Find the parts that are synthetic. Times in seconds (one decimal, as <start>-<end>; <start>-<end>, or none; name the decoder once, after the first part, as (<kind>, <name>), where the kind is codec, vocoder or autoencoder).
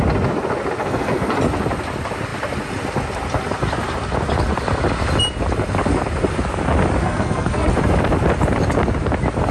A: 0.8-1.3 (codec, SNAC); 7.0-7.7